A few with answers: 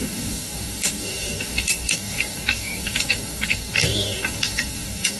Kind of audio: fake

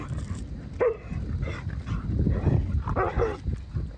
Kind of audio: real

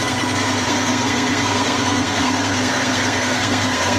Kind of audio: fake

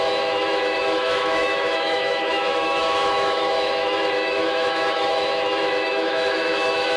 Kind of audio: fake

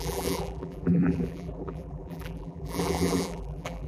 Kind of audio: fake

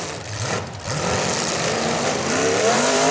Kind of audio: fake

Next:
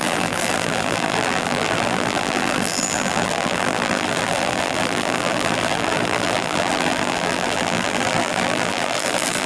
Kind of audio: fake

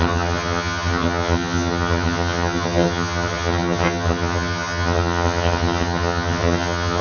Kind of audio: fake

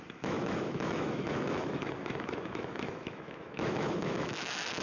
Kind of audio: fake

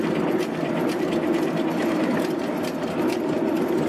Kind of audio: real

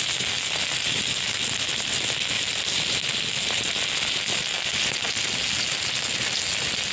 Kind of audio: real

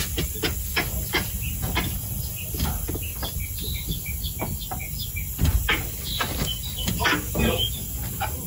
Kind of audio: real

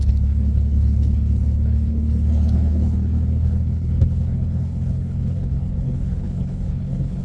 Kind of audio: fake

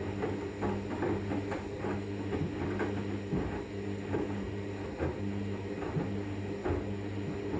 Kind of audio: real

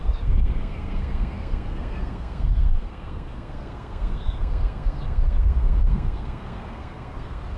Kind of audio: fake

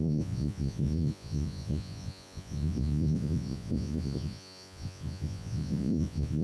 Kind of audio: fake